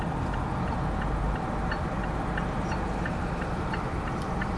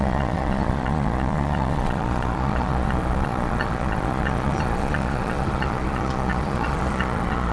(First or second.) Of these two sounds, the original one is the first